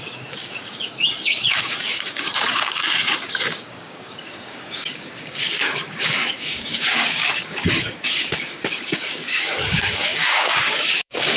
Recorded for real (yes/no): no